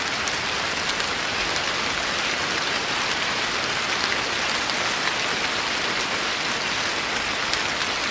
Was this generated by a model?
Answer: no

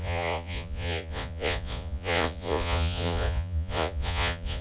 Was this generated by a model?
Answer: yes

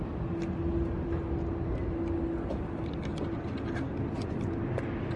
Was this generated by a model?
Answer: no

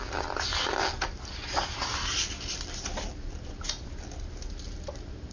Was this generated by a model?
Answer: no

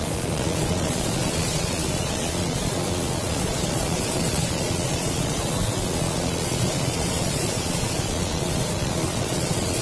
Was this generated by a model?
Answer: yes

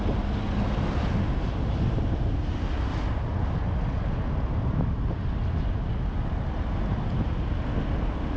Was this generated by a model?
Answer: no